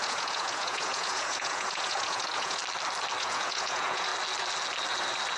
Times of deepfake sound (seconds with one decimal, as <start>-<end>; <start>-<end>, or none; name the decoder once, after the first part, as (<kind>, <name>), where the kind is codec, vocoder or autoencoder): 0.0-2.6 (vocoder, Vocos); 3.2-4.1

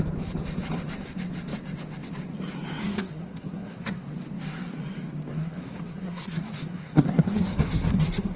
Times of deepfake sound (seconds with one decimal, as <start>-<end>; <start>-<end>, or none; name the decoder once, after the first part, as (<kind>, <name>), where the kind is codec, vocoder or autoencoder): 2.8-4.1 (codec, SNAC); 5.3-8.4